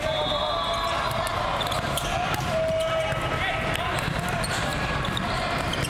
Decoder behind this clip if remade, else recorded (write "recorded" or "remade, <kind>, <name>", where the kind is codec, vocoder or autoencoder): recorded